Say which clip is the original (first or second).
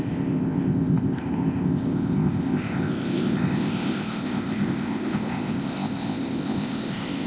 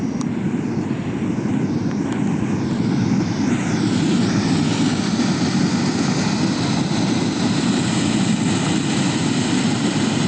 second